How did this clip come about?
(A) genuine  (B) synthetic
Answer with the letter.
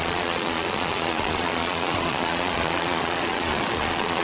B